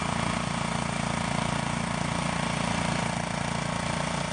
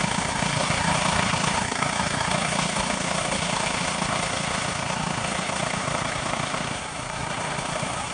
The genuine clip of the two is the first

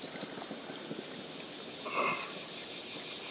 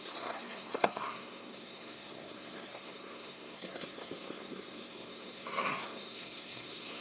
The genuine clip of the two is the first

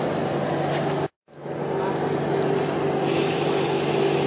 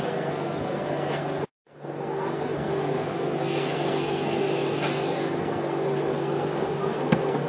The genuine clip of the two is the first